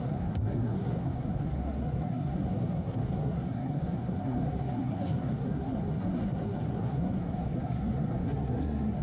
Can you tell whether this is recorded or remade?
remade